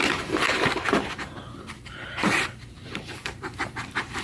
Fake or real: fake